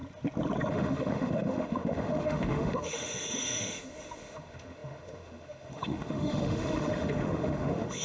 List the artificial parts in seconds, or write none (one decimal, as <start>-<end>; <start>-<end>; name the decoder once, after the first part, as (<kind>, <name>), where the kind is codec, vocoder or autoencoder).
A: 0.7-8.0 (autoencoder, DAC-VAE)

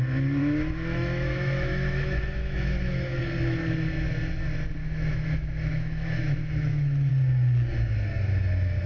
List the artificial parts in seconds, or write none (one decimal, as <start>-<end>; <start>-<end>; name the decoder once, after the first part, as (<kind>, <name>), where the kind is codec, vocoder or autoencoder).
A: 0.4-3.2 (autoencoder, DAC-VAE); 4.8-7.1

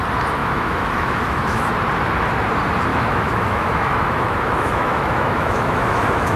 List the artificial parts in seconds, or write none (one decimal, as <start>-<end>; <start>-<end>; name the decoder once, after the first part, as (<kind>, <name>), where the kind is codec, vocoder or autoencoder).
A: 0.4-1.7 (autoencoder, DAC-VAE); 2.9-6.4

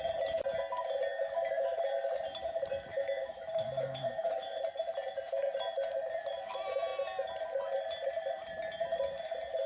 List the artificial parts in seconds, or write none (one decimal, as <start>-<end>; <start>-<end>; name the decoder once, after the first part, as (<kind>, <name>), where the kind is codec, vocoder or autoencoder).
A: 1.1-1.9 (autoencoder, DAC-VAE); 2.9-4.6

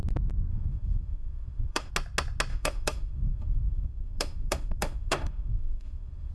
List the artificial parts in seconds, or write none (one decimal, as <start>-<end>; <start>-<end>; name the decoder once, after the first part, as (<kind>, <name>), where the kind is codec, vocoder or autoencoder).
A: 0.5-1.9 (autoencoder, DAC-VAE); 2.5-6.3

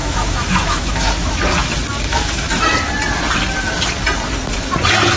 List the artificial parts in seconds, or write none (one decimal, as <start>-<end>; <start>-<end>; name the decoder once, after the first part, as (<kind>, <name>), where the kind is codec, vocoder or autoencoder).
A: 0.0-1.4 (autoencoder, DAC-VAE); 2.1-2.6

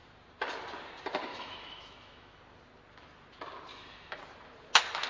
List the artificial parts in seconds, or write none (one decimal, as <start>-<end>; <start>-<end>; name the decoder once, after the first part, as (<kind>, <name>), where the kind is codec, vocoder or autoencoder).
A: 1.3-2.4 (autoencoder, DAC-VAE); 3.7-4.2

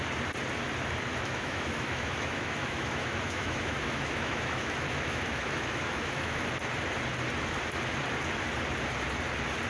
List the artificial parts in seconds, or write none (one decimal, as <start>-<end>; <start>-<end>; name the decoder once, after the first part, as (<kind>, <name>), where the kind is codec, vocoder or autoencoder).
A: 1.1-6.4 (autoencoder, DAC-VAE)